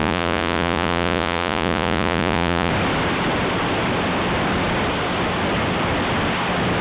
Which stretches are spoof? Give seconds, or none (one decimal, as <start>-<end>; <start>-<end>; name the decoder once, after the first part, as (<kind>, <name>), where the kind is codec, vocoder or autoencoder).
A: 0.0-2.7 (vocoder, Vocos)